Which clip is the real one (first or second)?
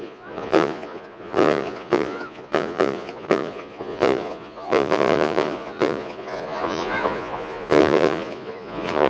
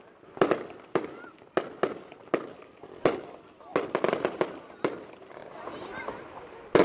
second